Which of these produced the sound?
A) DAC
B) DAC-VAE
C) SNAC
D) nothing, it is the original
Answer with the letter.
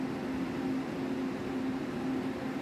D